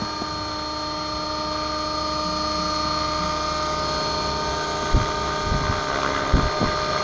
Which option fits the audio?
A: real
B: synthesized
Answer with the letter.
A